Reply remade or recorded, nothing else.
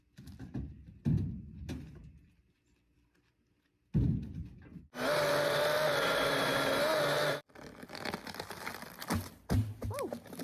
recorded